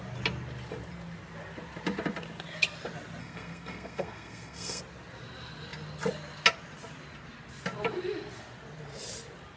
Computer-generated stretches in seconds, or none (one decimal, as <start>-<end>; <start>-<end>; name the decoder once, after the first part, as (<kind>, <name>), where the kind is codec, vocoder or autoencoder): 3.2-4.8 (codec, SNAC)